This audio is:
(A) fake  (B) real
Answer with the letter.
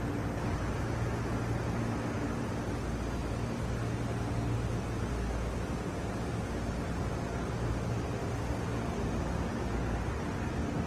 B